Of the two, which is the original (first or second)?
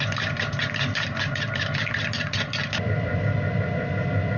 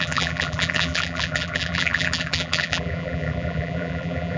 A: first